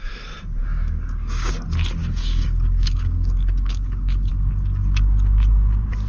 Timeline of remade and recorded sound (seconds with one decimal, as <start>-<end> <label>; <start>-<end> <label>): 0.0-0.6 recorded; 0.6-1.5 remade; 1.5-2.0 recorded; 2.0-4.3 remade; 4.3-6.1 recorded